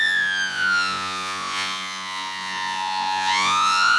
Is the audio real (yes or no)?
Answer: no